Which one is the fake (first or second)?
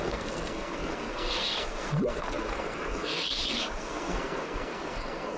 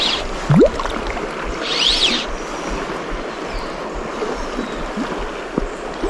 first